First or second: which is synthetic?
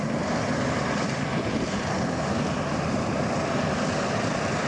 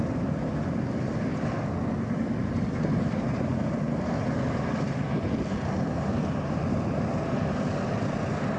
first